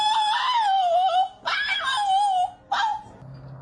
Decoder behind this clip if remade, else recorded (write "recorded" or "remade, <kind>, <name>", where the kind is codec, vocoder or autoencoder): recorded